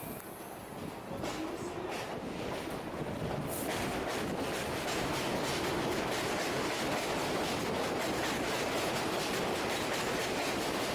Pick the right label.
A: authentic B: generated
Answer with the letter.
A